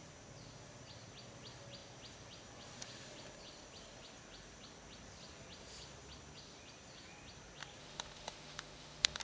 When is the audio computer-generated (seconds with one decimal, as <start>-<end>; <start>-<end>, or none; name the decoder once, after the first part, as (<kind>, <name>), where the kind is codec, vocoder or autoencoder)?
7.8-9.2 (autoencoder, DAC-VAE)